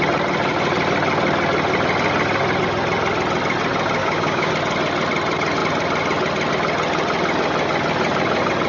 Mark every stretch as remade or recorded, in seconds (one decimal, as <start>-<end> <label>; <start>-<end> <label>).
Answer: 0.0-4.0 recorded; 4.0-4.5 remade; 4.5-8.7 recorded